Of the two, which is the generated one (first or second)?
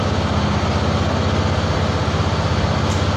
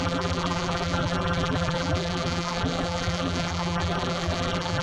second